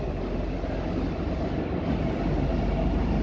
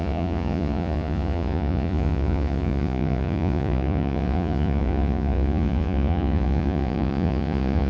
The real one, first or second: first